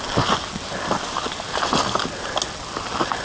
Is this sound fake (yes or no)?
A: no